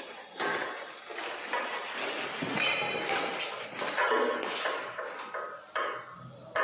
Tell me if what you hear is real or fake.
real